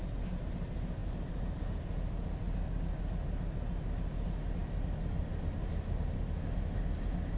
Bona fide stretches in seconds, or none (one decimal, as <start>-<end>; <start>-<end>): 0.0-7.4